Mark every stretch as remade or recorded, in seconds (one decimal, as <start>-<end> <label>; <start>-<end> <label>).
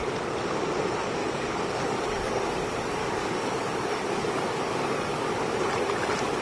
0.0-1.2 recorded; 1.2-2.6 remade; 2.6-3.0 recorded; 3.0-5.3 remade; 5.3-6.4 recorded